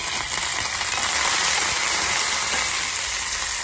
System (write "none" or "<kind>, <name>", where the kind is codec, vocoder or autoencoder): none